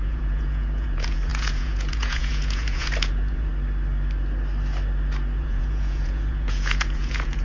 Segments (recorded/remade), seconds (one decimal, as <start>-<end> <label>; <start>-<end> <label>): 0.0-3.5 remade; 3.5-5.4 recorded; 5.4-7.4 remade